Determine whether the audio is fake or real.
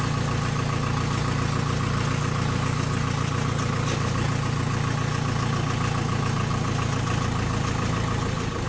real